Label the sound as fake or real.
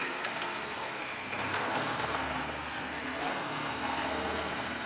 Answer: fake